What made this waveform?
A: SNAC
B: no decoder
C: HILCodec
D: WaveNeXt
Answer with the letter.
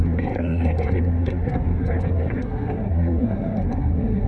A